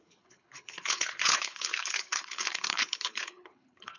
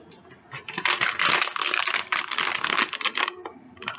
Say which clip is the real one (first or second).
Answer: second